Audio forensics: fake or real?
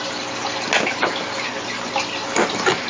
real